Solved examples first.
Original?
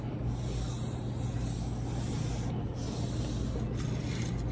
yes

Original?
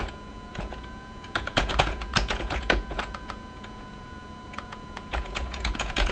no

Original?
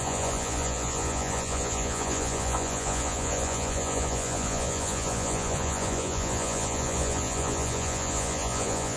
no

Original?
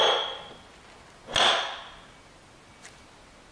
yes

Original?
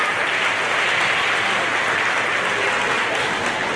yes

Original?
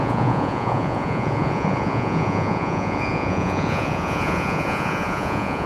no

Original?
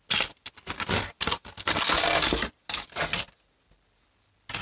yes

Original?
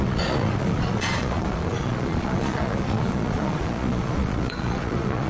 no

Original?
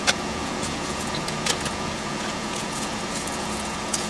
no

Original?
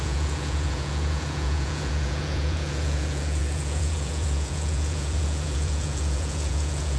no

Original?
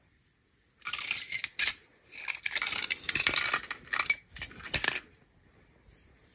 yes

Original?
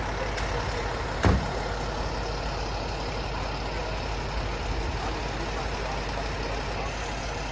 yes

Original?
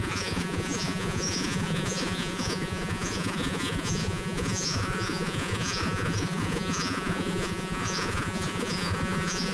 no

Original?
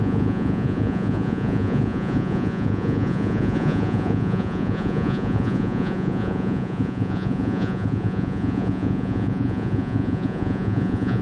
no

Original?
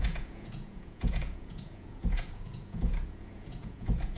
no